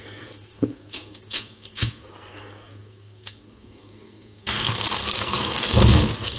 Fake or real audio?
fake